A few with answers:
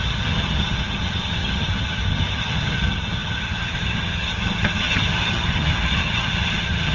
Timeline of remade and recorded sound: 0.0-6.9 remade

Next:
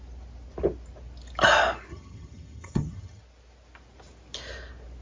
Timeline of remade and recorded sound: 0.0-1.9 recorded; 1.9-3.2 remade; 3.2-5.0 recorded

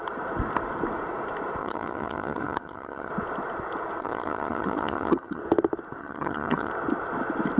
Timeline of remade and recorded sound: 0.0-1.6 recorded; 1.6-3.1 remade; 3.1-4.0 recorded; 4.0-5.4 remade; 5.4-6.0 recorded; 6.0-6.7 remade; 6.7-7.6 recorded